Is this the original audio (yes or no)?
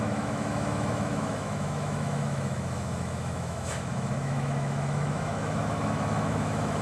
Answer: no